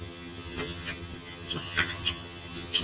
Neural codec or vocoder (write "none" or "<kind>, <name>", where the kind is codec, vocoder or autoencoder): vocoder, HiFi-GAN